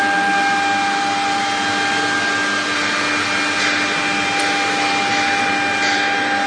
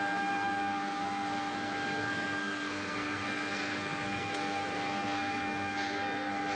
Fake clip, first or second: second